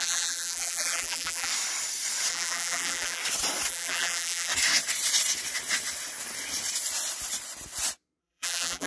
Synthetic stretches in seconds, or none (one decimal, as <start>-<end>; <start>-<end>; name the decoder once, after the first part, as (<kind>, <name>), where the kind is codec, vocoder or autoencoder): 0.0-1.5 (vocoder, BigVGAN v2); 2.3-3.2; 3.7-4.5; 8.2-8.9

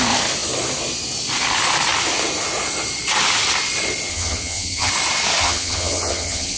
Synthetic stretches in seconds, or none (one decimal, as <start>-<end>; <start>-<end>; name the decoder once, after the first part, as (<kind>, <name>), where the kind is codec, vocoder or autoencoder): 4.1-4.9 (vocoder, HiFi-GAN); 5.4-6.6

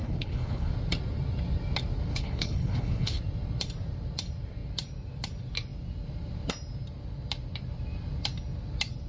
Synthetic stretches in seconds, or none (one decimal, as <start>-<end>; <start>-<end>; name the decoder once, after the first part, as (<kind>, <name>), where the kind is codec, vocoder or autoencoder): 0.0-0.7 (codec, HILCodec); 2.1-3.2

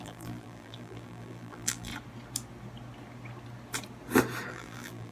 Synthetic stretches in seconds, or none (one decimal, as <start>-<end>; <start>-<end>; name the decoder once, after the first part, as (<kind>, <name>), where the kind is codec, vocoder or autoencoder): 0.0-1.9 (vocoder, BigVGAN v2); 4.5-5.1

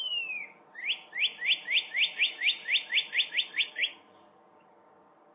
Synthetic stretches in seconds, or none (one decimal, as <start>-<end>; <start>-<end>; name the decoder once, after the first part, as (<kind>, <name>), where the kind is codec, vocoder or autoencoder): 0.0-0.8 (codec, DAC); 2.2-2.6; 3.3-5.3

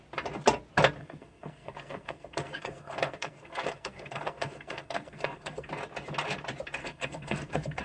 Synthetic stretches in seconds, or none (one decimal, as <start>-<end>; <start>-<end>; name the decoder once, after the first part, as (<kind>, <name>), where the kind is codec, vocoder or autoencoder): 1.0-5.7 (codec, SNAC); 6.8-7.8

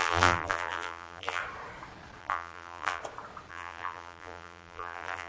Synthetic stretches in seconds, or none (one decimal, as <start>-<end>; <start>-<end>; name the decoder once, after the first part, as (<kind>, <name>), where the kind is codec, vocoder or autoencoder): 0.0-1.4 (vocoder, BigVGAN v2); 2.2-3.0; 3.5-5.3